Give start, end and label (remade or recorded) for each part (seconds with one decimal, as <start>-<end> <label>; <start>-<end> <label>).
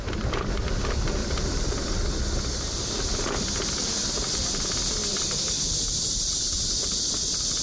0.0-1.2 recorded; 1.2-1.8 remade; 1.8-5.0 recorded; 5.0-7.0 remade; 7.0-7.6 recorded